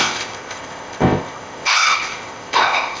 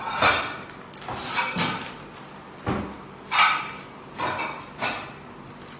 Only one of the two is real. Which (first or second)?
second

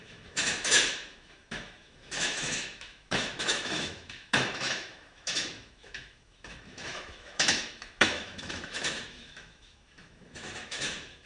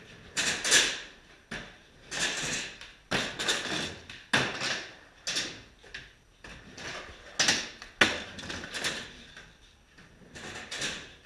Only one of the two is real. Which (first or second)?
second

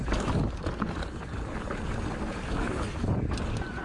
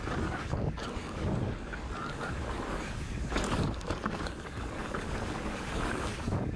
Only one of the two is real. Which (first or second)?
first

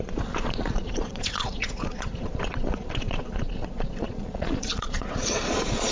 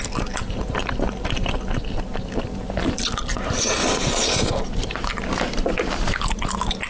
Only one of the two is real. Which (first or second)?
second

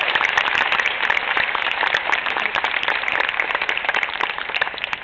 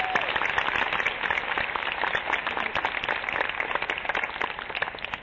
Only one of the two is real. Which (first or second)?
second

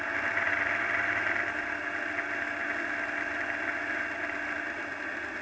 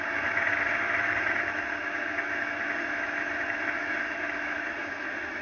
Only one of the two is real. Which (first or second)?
first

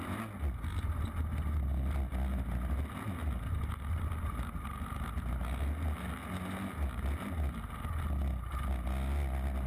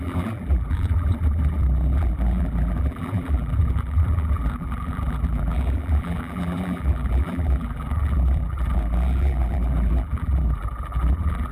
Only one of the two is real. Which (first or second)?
first